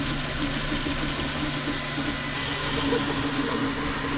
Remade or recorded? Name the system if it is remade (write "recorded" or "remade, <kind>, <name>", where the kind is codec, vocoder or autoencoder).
recorded